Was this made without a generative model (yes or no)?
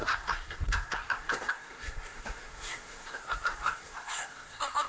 no